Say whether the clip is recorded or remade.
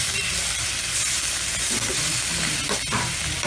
recorded